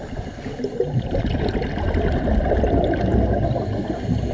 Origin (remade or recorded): recorded